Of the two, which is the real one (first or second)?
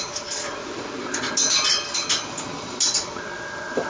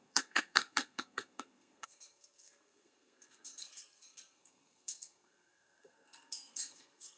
first